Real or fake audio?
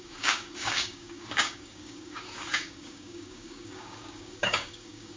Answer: fake